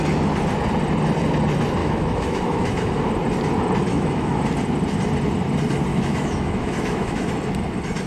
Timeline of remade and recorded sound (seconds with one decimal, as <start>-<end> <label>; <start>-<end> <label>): 0.0-1.8 recorded; 1.8-3.1 remade; 3.1-3.9 recorded; 3.9-4.4 remade; 4.4-5.9 recorded; 5.9-7.3 remade; 7.3-8.1 recorded